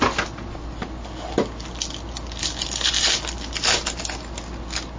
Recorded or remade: recorded